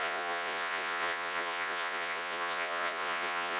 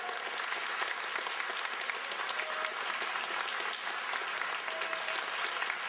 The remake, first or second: first